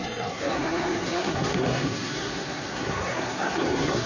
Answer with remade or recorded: remade